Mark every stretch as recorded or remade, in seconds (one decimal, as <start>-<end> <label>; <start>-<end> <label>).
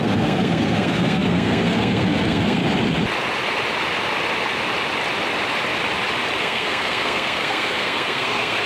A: 0.0-2.6 remade; 2.6-6.4 recorded; 6.4-8.7 remade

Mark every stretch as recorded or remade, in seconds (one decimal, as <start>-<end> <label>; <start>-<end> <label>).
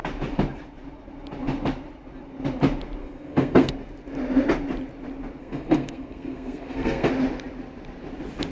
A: 0.0-3.0 recorded; 3.0-3.7 remade; 3.7-5.4 recorded; 5.4-7.1 remade; 7.1-8.5 recorded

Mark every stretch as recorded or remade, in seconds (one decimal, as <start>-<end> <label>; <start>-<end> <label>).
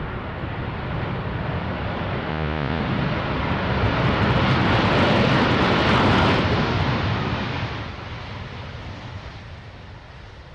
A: 0.0-2.3 recorded; 2.3-2.8 remade; 2.8-10.5 recorded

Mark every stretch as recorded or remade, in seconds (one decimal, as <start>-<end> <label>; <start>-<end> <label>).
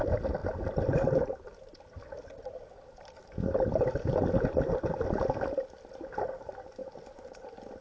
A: 0.0-7.8 recorded